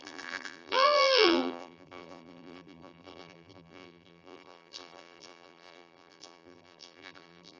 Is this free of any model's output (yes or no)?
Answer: no